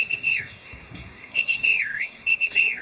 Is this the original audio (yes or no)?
no